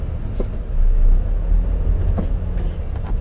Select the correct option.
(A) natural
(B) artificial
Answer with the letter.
A